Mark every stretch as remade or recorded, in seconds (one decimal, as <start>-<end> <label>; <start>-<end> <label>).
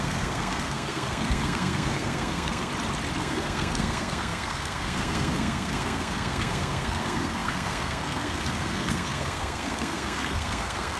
0.0-2.7 remade; 2.7-3.2 recorded; 3.2-11.0 remade